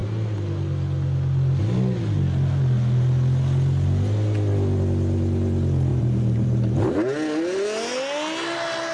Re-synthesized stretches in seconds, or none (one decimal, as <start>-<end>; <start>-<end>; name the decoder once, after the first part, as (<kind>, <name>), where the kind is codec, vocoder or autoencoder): 5.9-6.9 (vocoder, BigVGAN v2)